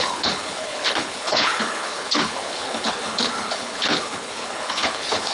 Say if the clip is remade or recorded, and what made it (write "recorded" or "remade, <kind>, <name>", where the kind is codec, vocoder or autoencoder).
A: remade, codec, HILCodec